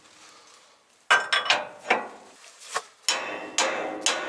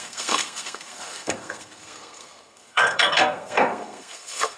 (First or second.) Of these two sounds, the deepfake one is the second